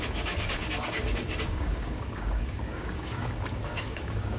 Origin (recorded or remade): remade